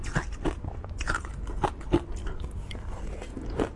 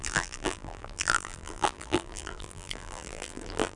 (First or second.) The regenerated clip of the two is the second